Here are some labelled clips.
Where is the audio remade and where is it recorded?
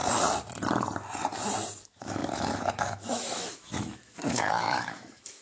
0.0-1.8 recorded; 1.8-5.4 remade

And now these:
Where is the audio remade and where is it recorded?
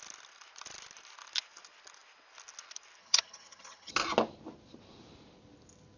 0.0-3.0 recorded; 3.0-3.9 remade; 3.9-6.0 recorded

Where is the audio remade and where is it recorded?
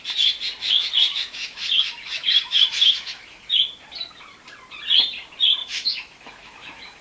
0.0-0.6 recorded; 0.6-3.7 remade; 3.7-5.6 recorded; 5.6-7.0 remade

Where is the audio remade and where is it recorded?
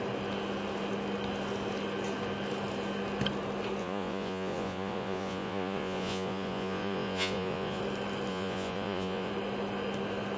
0.0-3.8 recorded; 3.8-7.8 remade; 7.8-8.3 recorded; 8.3-9.3 remade; 9.3-10.4 recorded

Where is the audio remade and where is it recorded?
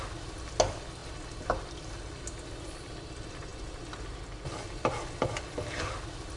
0.0-6.4 recorded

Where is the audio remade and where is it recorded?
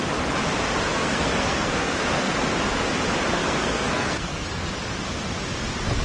0.0-0.9 recorded; 0.9-2.3 remade; 2.3-3.4 recorded; 3.4-4.7 remade; 4.7-6.0 recorded